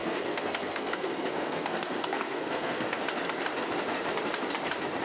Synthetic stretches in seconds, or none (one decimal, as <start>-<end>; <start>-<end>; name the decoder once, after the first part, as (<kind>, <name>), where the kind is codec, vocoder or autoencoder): 0.0-3.0 (codec, SNAC)